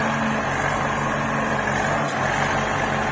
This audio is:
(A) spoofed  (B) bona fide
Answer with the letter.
B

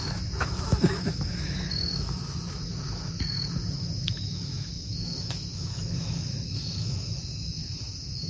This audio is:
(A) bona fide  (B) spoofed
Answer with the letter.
B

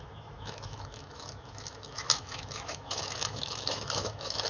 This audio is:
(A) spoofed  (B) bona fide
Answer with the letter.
A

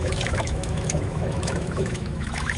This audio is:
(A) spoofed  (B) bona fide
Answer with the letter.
A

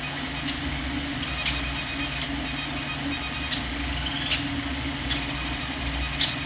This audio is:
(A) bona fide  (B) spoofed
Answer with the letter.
A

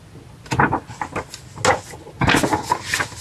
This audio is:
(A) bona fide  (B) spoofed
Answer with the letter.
A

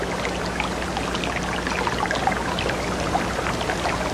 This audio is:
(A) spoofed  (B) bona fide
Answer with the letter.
B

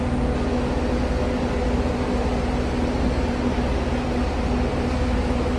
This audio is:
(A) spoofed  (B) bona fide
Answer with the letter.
B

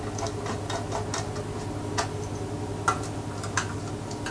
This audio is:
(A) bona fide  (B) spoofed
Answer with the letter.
A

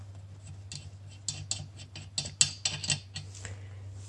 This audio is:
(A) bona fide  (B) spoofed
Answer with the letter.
A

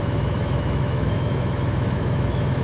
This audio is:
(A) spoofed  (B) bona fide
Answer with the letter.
A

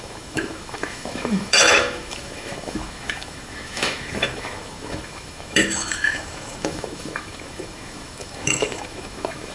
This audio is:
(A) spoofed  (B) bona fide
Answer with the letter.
A